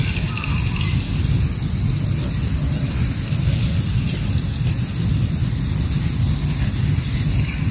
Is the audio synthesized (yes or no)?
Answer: no